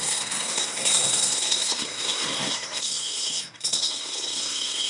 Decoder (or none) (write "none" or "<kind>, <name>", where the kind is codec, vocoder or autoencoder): codec, SNAC